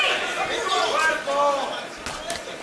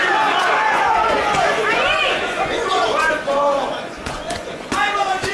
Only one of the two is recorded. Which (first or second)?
first